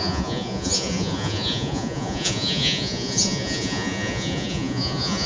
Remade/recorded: remade